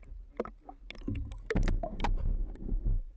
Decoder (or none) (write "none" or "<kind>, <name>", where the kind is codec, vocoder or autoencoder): none